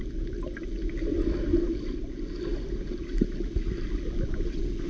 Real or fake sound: real